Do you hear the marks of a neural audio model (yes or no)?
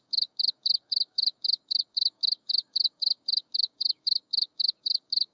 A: yes